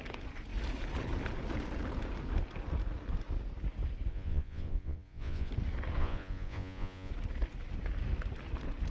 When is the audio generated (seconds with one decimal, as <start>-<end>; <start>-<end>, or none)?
4.1-5.5; 6.0-7.1